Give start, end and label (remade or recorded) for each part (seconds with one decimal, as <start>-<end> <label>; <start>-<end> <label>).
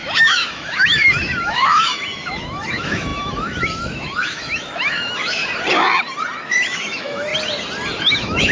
0.0-5.4 remade; 5.4-6.5 recorded; 6.5-7.3 remade; 7.3-8.0 recorded; 8.0-8.5 remade